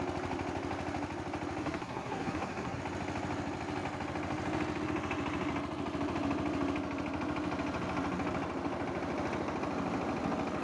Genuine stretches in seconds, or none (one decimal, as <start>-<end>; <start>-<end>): 0.0-1.6; 2.8-10.6